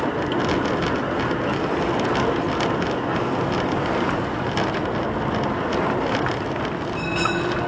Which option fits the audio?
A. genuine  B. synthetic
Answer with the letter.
A